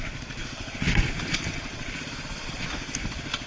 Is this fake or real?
real